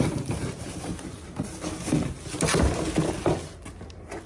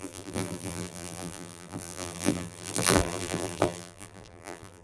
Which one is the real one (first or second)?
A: first